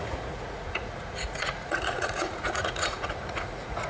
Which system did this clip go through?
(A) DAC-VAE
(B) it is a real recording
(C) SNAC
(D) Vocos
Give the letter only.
D